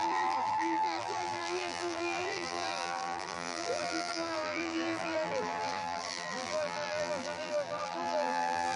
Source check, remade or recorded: remade